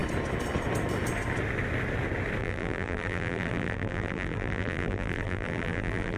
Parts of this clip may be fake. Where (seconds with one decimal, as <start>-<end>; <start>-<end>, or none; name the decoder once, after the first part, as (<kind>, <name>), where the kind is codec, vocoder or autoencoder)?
2.4-6.2 (vocoder, BigVGAN v2)